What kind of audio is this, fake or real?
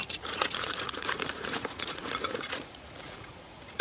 fake